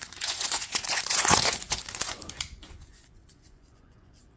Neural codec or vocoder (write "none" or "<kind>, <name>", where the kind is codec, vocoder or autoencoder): vocoder, Vocos